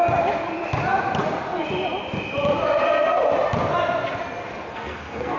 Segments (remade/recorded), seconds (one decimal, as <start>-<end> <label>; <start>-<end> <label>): 0.0-4.7 recorded; 4.7-5.4 remade